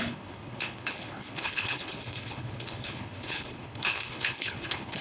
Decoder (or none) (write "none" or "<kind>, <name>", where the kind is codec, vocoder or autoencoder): codec, HILCodec